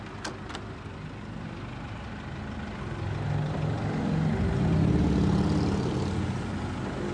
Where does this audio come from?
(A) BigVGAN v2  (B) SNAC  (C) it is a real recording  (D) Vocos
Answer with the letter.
C